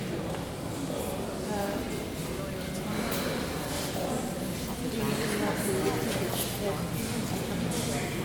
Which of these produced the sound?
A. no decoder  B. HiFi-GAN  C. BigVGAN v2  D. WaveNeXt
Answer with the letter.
A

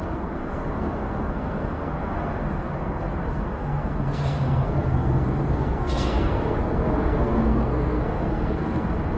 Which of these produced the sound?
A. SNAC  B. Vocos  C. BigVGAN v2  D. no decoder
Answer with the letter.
A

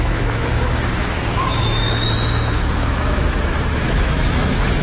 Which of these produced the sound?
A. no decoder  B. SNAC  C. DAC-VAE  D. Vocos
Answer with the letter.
C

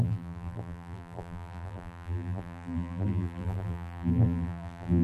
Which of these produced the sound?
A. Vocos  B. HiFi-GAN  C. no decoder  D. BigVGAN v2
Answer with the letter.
D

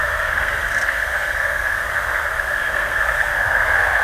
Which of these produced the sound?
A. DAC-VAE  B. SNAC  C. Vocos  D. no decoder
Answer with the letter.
B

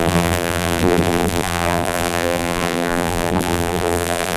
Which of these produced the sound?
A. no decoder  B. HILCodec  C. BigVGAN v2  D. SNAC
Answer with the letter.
C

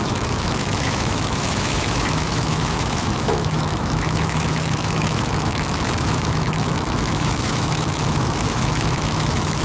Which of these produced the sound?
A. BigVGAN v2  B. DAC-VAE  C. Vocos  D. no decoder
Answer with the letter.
B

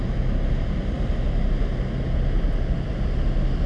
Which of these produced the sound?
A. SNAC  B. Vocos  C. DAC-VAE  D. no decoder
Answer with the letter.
D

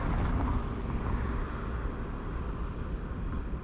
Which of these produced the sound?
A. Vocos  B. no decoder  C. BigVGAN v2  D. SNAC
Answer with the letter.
B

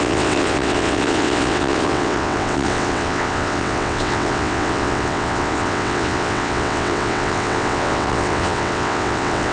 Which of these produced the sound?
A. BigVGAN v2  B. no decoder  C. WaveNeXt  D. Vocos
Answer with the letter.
C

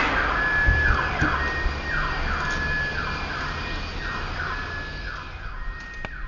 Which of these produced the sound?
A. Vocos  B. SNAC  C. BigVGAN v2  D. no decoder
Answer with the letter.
D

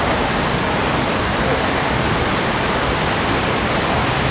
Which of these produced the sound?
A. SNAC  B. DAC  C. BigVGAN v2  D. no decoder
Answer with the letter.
C